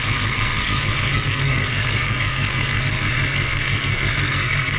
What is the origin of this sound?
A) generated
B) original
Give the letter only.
A